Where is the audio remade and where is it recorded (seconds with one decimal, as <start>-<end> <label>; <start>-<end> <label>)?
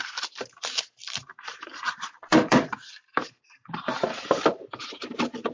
0.0-1.2 recorded; 1.2-2.6 remade; 2.6-3.2 recorded; 3.2-4.8 remade; 4.8-5.5 recorded